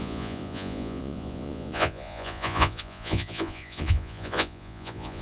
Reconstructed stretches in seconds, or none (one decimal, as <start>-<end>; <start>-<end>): 0.0-5.2